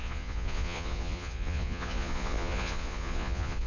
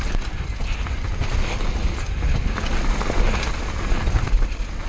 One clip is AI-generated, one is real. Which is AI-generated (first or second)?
first